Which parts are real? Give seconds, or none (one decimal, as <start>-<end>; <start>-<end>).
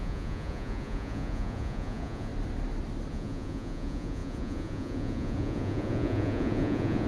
2.3-3.1